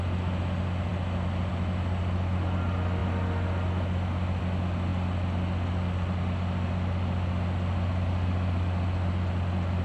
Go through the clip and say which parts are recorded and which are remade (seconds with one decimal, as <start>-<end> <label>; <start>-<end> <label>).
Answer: 0.0-9.8 recorded